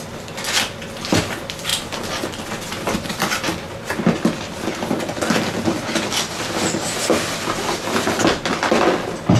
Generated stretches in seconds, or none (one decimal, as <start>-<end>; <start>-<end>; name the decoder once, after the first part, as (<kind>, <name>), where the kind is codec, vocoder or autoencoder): none